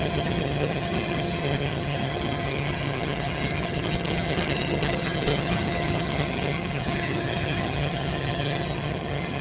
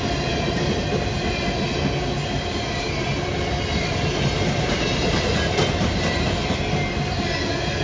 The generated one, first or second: first